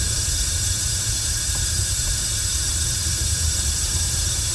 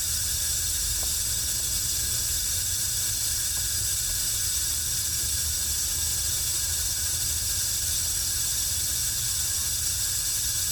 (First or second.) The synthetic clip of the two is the first